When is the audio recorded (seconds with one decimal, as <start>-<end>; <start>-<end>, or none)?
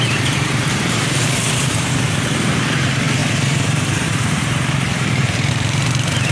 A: none